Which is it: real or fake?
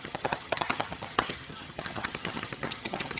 fake